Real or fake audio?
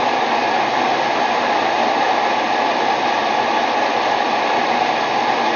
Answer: real